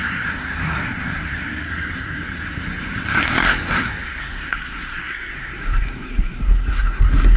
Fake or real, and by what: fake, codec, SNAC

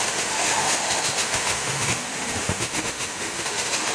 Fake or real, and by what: fake, autoencoder, DAC-VAE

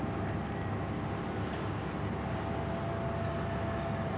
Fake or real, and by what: real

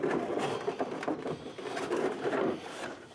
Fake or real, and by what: real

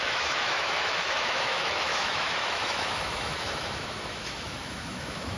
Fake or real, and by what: fake, autoencoder, DAC-VAE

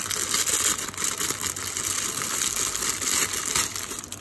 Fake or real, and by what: real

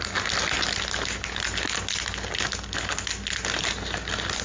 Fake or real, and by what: real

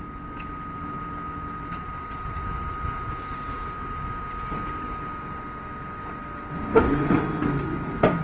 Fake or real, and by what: real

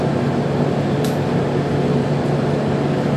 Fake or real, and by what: fake, vocoder, BigVGAN v2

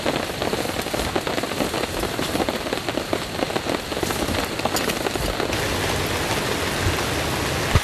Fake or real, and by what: real